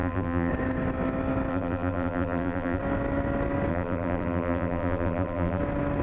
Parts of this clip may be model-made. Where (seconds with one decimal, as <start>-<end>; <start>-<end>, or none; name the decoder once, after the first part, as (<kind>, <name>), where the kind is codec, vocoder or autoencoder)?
0.0-0.5 (vocoder, BigVGAN v2); 1.5-2.8; 3.7-5.6